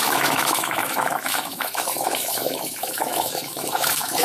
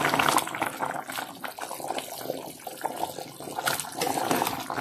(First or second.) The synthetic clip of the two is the first